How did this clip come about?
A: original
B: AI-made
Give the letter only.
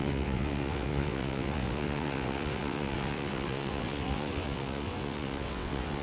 B